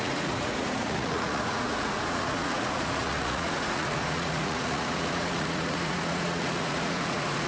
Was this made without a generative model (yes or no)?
no